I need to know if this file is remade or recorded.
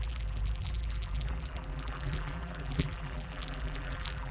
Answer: remade